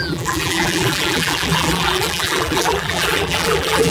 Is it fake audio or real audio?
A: fake